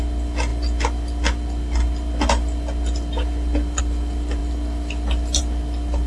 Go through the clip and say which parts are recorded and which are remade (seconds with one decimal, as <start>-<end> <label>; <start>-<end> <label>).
0.0-6.1 recorded